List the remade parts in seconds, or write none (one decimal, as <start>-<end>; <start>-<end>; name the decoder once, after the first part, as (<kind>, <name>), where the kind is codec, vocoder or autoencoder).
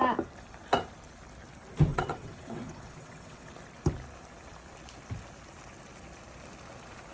1.9-3.5 (vocoder, WaveNeXt)